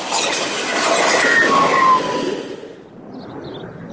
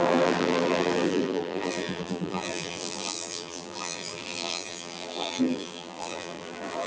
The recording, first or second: first